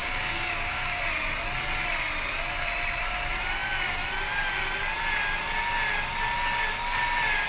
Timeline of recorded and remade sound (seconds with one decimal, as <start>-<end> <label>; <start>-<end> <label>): 0.0-1.0 remade; 1.0-7.5 recorded